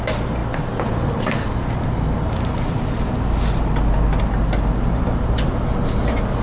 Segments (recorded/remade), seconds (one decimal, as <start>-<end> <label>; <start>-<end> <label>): 0.0-6.4 recorded